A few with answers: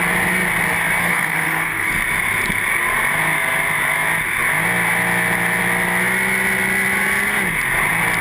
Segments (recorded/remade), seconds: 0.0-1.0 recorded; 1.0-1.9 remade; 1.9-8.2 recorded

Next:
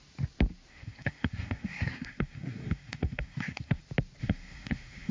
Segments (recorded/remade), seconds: 0.0-0.7 recorded; 0.7-3.8 remade; 3.8-4.2 recorded; 4.2-5.1 remade